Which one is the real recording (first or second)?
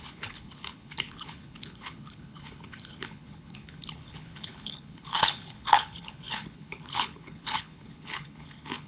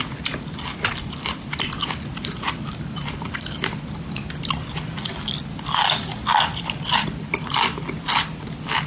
second